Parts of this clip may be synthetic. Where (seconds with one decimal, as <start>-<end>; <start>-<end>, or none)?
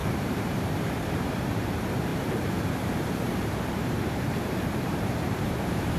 0.0-6.0